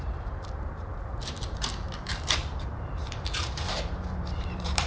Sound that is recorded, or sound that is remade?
remade